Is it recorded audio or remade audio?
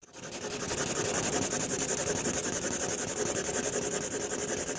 recorded